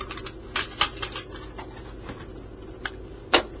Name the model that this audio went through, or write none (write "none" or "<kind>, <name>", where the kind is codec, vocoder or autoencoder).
none